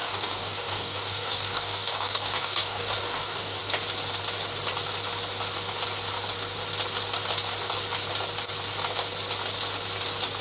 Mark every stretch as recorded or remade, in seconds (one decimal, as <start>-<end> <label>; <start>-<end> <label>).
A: 0.0-3.6 remade; 3.6-10.4 recorded